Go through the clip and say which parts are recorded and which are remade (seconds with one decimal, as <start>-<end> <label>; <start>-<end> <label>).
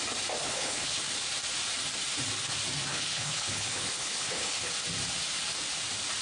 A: 0.0-0.4 recorded; 0.4-1.0 remade; 1.0-2.9 recorded; 2.9-4.7 remade; 4.7-6.2 recorded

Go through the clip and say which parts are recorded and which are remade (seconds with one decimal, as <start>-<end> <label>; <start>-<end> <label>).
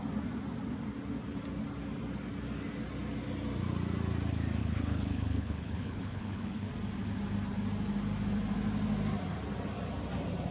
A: 0.0-4.6 recorded; 4.6-6.7 remade; 6.7-10.5 recorded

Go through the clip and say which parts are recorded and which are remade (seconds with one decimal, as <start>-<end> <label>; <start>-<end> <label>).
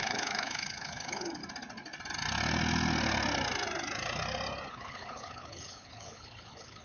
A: 0.0-1.4 remade; 1.4-4.7 recorded; 4.7-6.8 remade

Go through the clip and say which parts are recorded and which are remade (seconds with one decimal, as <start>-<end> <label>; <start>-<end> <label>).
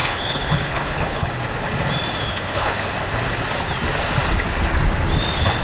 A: 0.0-1.3 remade; 1.3-2.3 recorded; 2.3-2.8 remade; 2.8-5.6 recorded